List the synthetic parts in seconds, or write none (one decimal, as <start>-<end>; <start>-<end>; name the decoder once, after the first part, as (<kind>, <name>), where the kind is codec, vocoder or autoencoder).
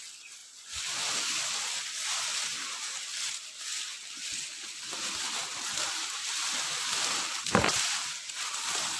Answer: none